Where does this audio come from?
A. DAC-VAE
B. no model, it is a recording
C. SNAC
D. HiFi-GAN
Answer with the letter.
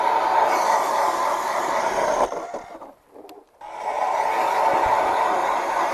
B